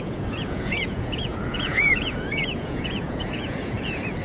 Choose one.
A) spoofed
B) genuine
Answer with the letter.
A